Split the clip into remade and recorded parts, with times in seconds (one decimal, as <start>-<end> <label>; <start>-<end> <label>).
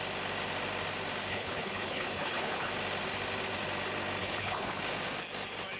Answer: 0.0-1.3 recorded; 1.3-2.7 remade; 2.7-4.2 recorded; 4.2-4.8 remade; 4.8-5.8 recorded